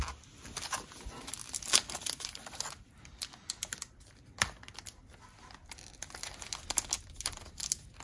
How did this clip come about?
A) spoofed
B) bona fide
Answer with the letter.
B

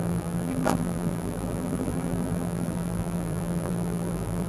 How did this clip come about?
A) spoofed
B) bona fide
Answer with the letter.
A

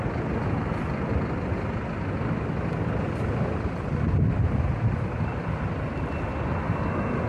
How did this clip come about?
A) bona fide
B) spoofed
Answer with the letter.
A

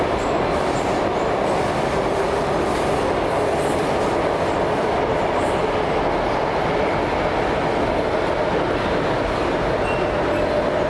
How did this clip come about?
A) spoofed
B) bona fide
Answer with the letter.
B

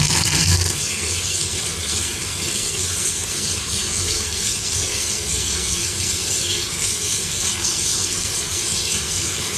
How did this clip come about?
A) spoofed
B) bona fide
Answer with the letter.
A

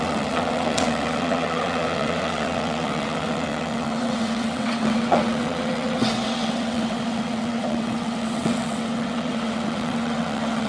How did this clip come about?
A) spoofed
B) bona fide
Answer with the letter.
A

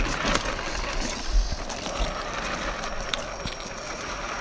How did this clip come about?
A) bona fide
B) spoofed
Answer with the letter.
A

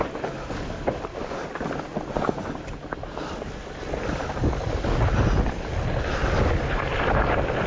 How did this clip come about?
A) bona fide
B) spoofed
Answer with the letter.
A